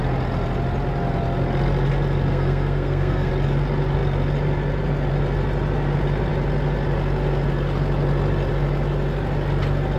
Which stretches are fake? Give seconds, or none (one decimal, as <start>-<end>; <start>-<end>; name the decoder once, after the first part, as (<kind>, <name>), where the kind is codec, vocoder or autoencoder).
2.3-3.3 (codec, SNAC)